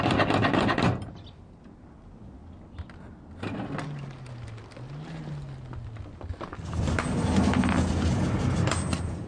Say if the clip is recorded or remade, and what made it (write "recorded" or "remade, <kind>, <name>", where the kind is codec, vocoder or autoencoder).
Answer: recorded